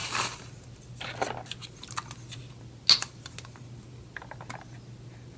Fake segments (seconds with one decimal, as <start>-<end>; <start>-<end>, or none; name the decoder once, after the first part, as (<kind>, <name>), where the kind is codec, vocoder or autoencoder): none